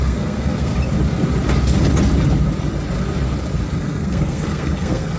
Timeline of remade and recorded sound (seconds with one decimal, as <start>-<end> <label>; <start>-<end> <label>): 0.0-0.7 remade; 0.7-3.8 recorded; 3.8-5.2 remade